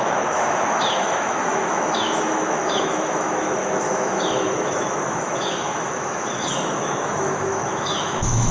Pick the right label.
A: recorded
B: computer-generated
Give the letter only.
B